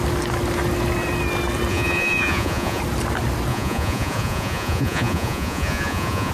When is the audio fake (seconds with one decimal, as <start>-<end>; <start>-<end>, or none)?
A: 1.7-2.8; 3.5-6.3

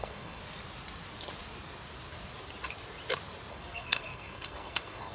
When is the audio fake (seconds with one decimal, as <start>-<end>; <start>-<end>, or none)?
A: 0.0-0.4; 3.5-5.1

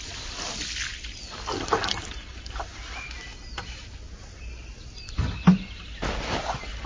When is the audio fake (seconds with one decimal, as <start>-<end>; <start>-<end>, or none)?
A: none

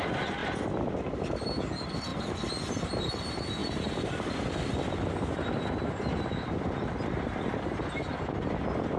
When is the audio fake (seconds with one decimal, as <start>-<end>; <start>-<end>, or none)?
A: 2.1-3.0; 3.6-4.7

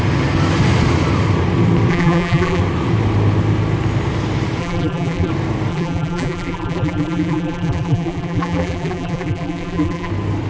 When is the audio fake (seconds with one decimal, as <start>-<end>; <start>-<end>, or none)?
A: 1.9-2.6; 4.6-5.3; 5.7-10.1

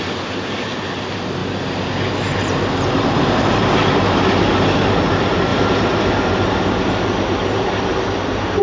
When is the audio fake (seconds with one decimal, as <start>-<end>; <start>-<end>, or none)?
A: 1.4-1.9; 2.4-4.2